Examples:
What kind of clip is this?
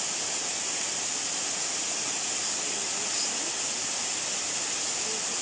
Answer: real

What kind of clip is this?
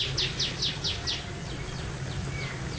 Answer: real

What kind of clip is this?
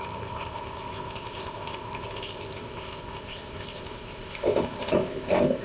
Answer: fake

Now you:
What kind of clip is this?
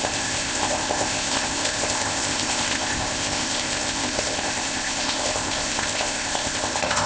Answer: fake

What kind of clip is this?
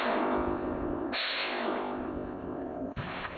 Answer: fake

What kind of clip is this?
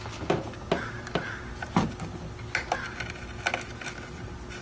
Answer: real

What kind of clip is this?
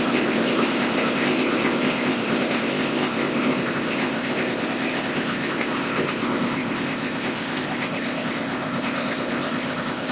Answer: fake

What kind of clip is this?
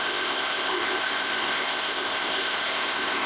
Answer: fake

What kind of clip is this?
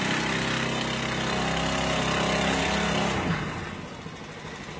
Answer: real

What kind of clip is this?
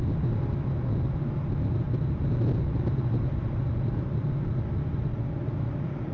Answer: real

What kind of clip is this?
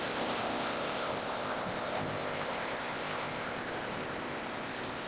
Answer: fake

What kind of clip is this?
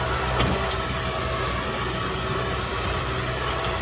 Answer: real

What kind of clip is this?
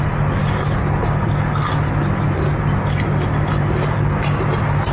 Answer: real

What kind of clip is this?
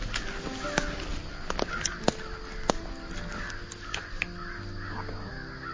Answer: real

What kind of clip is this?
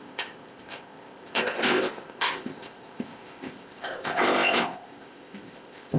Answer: fake